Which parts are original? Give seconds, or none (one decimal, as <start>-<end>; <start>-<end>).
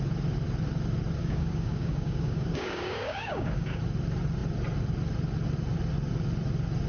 0.0-1.2; 3.8-6.9